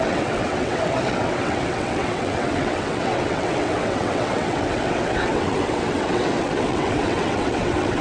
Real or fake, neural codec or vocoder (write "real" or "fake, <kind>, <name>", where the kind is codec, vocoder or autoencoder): fake, vocoder, WaveNeXt